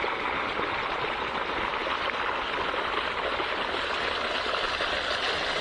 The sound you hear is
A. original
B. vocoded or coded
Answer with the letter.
A